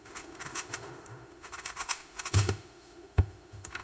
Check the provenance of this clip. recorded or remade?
remade